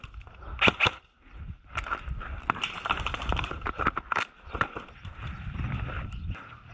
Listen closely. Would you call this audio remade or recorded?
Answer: remade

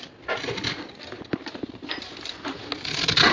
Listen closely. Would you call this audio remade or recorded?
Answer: recorded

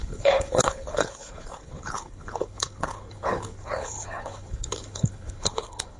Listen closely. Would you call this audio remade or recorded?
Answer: remade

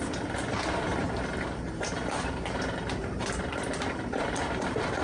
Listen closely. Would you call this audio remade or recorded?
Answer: remade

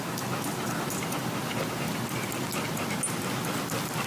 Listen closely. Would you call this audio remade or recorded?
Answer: recorded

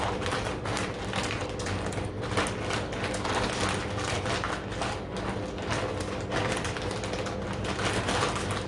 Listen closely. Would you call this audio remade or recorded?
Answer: recorded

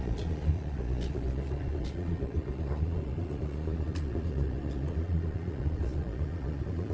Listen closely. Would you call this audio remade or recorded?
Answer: remade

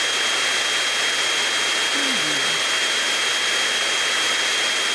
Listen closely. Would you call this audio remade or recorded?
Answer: recorded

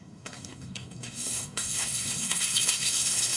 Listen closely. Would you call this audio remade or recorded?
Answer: remade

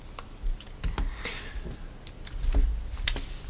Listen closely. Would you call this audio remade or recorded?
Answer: recorded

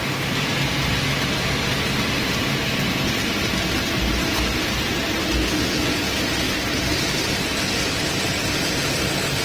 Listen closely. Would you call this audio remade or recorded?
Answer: recorded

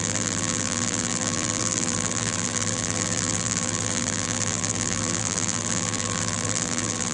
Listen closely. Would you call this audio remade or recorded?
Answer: remade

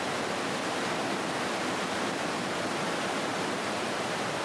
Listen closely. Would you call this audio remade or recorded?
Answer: recorded